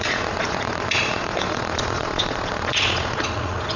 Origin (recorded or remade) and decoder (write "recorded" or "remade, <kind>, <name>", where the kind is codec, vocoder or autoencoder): remade, vocoder, Vocos